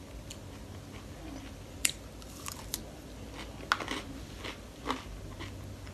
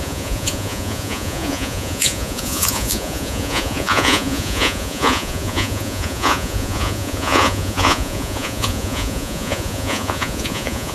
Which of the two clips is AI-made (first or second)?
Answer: second